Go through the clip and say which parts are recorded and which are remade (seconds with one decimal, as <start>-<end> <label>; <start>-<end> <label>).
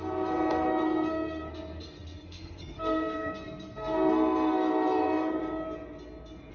0.0-5.4 remade; 5.4-6.5 recorded